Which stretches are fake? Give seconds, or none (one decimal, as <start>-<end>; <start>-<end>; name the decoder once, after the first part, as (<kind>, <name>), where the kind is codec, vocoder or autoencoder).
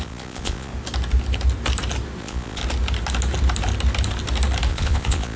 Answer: 0.0-0.7 (vocoder, Vocos); 2.2-2.6; 4.7-5.4